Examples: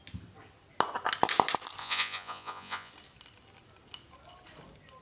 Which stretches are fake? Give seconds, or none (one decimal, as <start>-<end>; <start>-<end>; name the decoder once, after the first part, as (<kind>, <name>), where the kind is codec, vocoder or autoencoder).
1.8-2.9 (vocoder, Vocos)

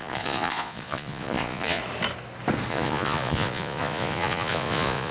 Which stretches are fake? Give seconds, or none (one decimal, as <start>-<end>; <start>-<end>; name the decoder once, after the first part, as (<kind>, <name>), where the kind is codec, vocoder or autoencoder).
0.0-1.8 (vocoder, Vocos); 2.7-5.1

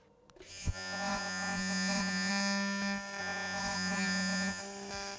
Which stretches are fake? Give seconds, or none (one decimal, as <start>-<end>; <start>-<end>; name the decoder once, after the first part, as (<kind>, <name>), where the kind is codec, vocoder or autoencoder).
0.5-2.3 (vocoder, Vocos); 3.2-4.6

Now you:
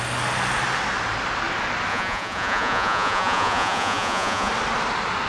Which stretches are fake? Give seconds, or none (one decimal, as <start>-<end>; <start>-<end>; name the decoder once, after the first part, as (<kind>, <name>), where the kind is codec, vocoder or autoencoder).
1.9-4.5 (vocoder, Vocos)